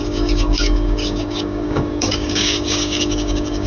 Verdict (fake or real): fake